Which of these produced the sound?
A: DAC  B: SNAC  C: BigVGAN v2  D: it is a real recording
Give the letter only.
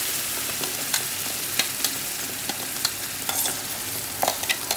D